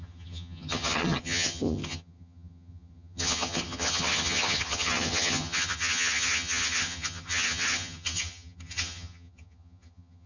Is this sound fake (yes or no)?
yes